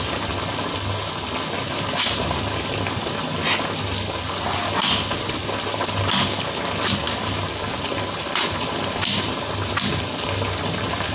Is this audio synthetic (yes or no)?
no